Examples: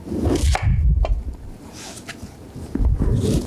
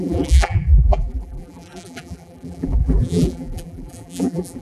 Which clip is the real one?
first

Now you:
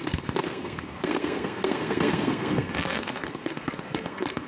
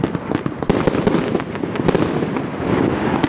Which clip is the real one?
second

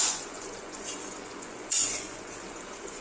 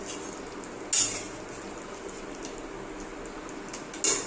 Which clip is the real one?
second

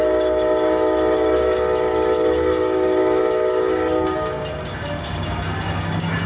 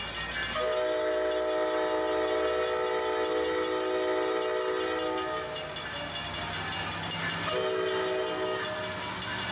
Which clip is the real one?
second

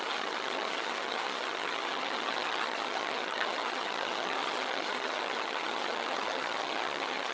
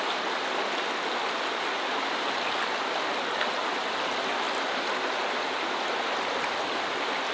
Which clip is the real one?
second